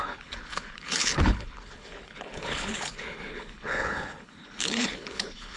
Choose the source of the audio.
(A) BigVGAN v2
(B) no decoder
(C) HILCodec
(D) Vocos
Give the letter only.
C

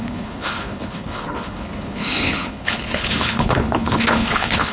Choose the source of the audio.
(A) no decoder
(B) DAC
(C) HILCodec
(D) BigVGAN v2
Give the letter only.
C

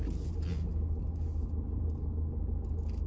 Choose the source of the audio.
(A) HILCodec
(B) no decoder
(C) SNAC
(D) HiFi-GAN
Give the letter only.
B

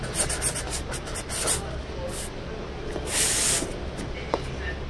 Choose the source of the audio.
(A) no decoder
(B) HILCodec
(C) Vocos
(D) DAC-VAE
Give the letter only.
A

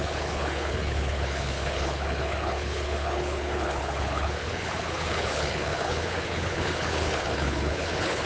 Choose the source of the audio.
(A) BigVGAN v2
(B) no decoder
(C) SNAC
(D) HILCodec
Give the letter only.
D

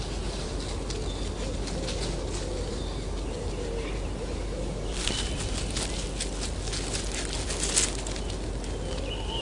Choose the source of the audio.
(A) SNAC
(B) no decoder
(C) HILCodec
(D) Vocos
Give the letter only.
B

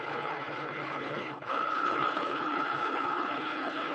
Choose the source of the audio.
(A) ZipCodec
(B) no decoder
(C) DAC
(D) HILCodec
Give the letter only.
D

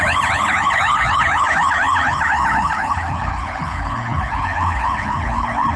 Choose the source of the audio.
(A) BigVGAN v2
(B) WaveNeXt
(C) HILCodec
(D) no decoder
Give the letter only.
C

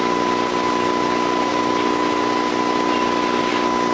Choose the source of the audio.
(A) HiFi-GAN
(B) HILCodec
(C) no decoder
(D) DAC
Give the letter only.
C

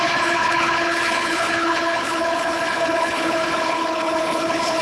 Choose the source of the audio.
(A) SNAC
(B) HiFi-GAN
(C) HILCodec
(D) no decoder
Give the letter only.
C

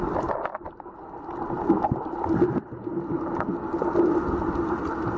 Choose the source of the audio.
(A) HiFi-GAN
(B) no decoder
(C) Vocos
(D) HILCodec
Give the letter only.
B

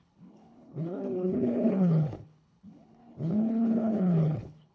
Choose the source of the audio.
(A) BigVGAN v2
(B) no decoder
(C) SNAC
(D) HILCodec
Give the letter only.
D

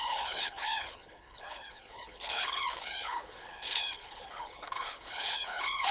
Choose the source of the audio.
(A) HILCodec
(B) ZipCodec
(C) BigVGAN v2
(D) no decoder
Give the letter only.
A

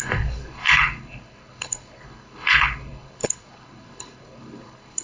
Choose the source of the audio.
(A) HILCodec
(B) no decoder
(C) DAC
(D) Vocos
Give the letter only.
A